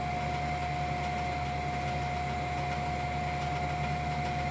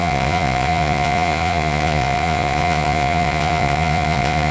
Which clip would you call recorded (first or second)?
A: first